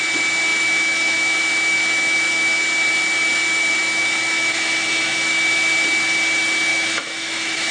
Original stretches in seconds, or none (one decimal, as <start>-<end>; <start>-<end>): 0.0-0.5; 2.6-3.8; 5.3-6.7